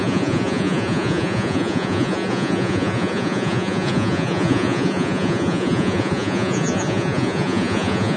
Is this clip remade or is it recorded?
remade